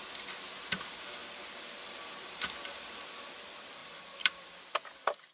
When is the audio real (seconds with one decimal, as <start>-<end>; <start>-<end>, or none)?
0.0-5.3